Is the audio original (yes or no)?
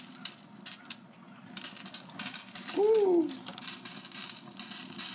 yes